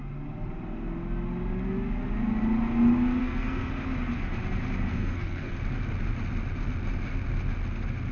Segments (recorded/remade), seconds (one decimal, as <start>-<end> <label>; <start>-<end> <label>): 0.0-3.2 recorded; 3.2-3.7 remade; 3.7-4.9 recorded; 4.9-5.5 remade; 5.5-8.1 recorded